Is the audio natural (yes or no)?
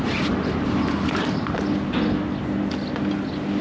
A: yes